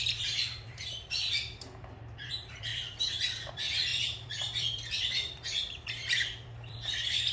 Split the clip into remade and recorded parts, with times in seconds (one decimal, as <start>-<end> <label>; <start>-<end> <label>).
0.0-7.3 remade